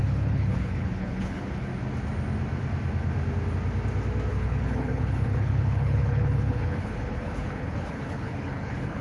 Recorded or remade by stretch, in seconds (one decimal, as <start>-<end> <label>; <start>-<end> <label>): 0.0-1.7 remade; 1.7-4.3 recorded; 4.3-9.0 remade